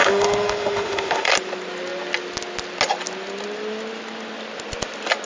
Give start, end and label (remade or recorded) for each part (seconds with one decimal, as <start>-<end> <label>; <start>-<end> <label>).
0.0-1.3 remade; 1.3-5.3 recorded